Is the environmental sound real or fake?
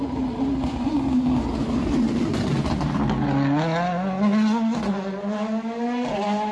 real